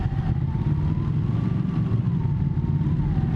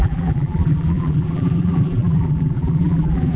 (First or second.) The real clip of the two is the first